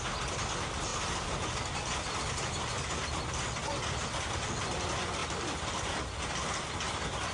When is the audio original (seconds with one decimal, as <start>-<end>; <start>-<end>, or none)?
0.0-0.9; 2.9-5.2; 6.0-7.3